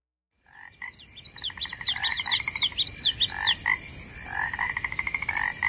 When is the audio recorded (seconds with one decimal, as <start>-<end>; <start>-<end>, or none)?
2.1-5.7